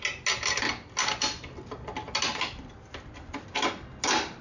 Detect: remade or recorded recorded